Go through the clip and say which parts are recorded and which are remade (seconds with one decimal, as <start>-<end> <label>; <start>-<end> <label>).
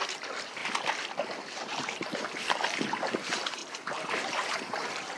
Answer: 0.0-0.6 remade; 0.6-1.6 recorded; 1.6-3.6 remade; 3.6-4.6 recorded; 4.6-5.2 remade